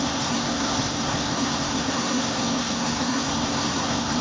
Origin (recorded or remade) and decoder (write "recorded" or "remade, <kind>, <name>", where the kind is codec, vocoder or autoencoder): remade, codec, SNAC